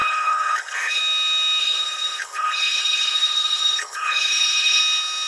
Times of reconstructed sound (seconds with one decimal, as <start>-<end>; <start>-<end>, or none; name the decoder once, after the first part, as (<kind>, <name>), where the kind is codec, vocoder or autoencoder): 0.0-1.0 (codec, HILCodec); 1.6-4.8